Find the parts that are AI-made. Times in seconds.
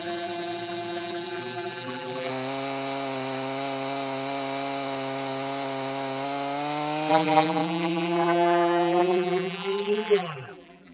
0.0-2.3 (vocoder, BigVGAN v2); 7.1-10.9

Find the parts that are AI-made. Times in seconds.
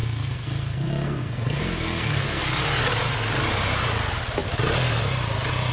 0.0-2.4 (codec, SNAC)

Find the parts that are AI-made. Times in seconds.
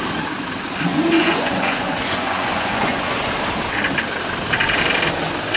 0.9-3.3 (vocoder, Vocos)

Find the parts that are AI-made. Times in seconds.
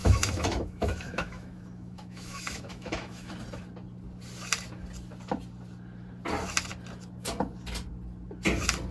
0.0-3.3 (autoencoder, DAC-VAE)